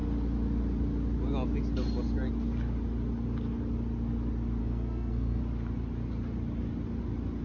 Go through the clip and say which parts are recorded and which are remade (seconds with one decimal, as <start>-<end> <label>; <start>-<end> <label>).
0.0-4.6 recorded; 4.6-5.4 remade; 5.4-7.4 recorded